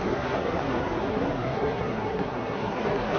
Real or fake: fake